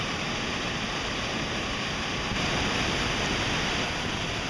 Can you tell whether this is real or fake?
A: real